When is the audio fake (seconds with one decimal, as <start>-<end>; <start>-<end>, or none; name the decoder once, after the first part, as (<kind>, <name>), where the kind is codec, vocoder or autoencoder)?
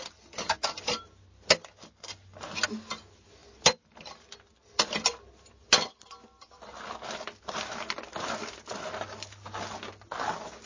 none